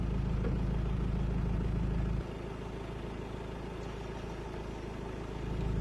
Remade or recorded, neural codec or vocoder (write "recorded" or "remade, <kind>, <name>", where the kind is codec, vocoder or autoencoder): recorded